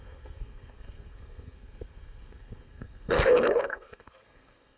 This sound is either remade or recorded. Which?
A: remade